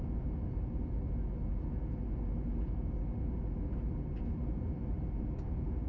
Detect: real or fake real